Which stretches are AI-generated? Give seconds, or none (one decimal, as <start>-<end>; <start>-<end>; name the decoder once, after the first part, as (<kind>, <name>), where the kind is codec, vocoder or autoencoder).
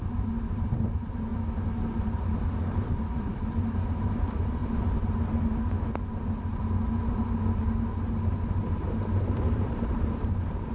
0.0-1.3 (vocoder, BigVGAN v2); 2.6-4.6; 8.9-10.7